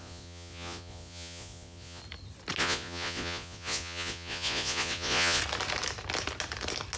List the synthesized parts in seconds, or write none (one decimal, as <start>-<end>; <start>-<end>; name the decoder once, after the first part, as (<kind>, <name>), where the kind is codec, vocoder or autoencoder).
0.0-2.0 (vocoder, Vocos); 2.6-5.4